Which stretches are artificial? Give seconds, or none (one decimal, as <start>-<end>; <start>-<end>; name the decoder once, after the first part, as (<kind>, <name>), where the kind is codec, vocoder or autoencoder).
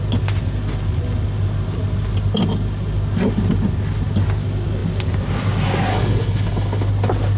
5.9-6.9 (codec, HILCodec)